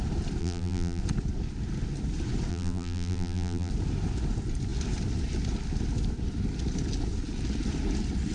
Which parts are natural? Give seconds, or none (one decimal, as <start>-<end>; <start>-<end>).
0.0-0.4; 1.0-2.5; 3.7-8.3